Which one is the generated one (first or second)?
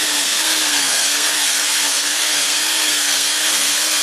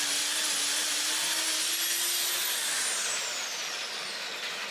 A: first